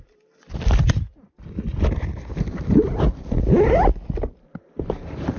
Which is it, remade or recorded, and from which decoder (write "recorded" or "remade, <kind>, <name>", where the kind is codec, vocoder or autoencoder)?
recorded